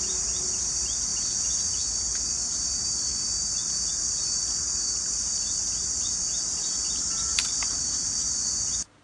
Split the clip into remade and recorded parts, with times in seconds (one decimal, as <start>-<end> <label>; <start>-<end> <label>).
0.0-9.0 recorded